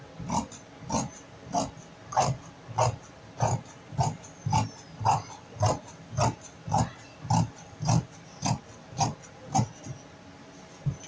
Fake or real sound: real